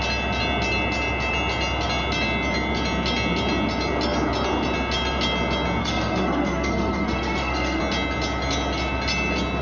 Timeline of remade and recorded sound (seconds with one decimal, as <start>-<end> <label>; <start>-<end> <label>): 0.0-5.8 recorded; 5.8-7.8 remade; 7.8-9.6 recorded